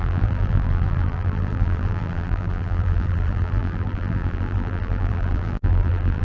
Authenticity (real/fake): fake